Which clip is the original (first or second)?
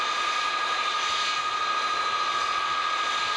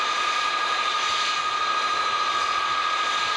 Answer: first